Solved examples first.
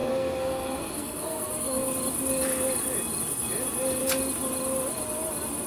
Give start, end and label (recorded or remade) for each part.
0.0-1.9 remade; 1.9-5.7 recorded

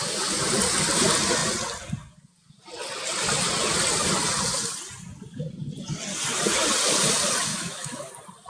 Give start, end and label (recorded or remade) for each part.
0.0-7.5 recorded; 7.5-8.1 remade; 8.1-8.5 recorded

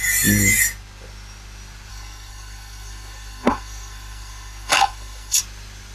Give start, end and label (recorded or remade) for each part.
0.0-1.9 recorded; 1.9-5.4 remade; 5.4-5.9 recorded

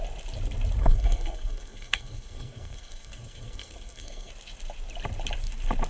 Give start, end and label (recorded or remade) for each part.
0.0-0.8 recorded; 0.8-4.3 remade; 4.3-5.9 recorded

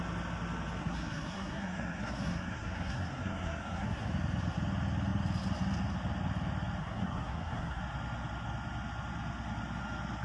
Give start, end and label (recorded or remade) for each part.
0.0-0.8 recorded; 0.8-4.1 remade; 4.1-6.8 recorded; 6.8-7.8 remade; 7.8-10.2 recorded

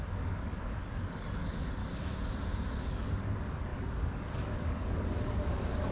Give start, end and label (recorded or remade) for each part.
0.0-1.8 remade; 1.8-2.8 recorded; 2.8-5.9 remade